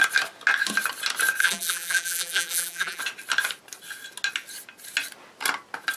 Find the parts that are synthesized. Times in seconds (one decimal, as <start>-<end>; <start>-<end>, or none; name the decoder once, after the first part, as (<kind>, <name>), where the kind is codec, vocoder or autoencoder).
1.4-3.0 (vocoder, BigVGAN v2)